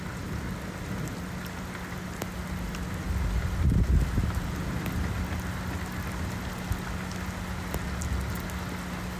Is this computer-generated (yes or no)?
no